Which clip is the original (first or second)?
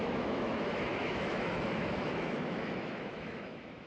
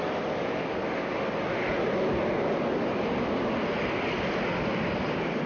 second